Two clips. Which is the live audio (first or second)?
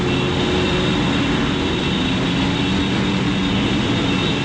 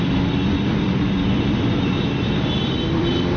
first